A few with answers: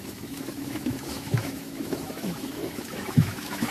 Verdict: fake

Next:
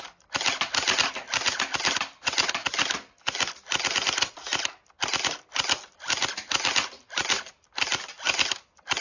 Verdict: real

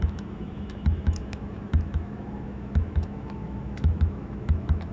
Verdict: fake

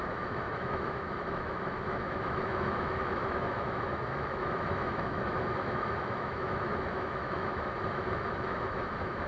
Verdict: fake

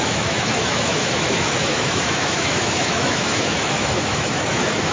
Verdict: fake